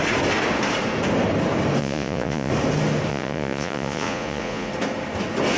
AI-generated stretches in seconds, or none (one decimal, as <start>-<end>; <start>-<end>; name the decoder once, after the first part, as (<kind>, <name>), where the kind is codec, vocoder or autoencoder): 1.8-2.5 (vocoder, Vocos); 3.1-4.7

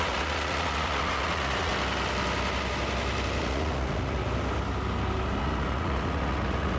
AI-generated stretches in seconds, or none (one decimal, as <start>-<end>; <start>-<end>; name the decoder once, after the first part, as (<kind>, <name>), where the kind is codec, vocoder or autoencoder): 0.0-1.7 (vocoder, Vocos); 3.4-4.2; 5.4-6.8

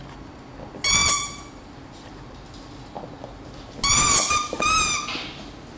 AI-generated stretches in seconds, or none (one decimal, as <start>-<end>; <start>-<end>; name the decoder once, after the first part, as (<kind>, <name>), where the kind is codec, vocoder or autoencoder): none

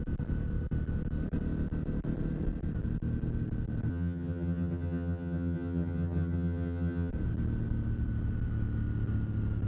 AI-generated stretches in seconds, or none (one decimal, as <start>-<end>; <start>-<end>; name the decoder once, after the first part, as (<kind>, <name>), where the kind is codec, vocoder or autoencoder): 3.9-7.1 (vocoder, HiFi-GAN)